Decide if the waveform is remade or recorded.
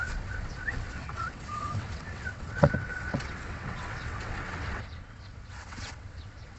remade